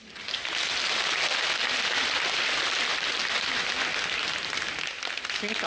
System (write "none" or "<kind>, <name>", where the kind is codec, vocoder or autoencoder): none